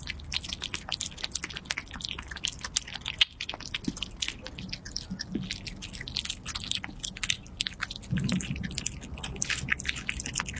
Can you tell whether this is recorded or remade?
recorded